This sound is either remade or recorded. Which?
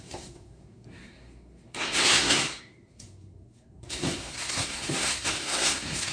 remade